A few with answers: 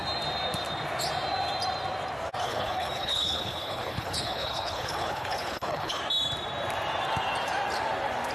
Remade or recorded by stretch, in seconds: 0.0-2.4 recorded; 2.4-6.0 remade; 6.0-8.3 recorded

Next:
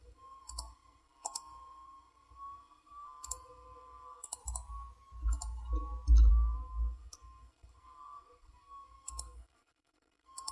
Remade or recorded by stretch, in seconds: 0.0-4.4 remade; 4.4-6.3 recorded; 6.3-10.5 remade